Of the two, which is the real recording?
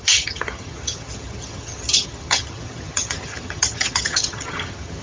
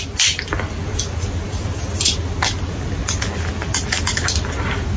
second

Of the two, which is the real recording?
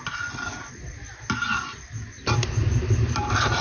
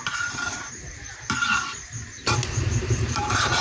first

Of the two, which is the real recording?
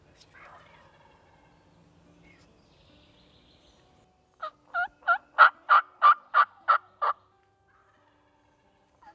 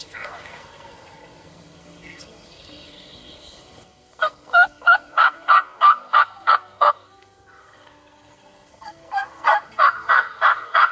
first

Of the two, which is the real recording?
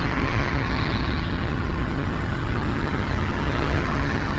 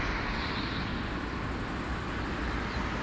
second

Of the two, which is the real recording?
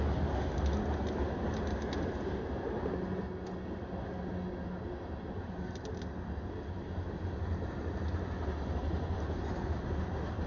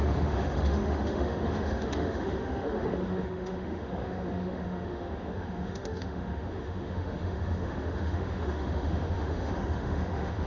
first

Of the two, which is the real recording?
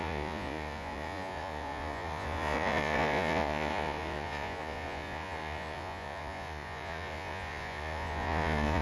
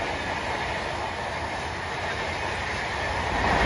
second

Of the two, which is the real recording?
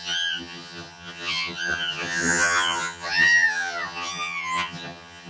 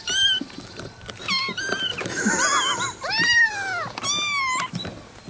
second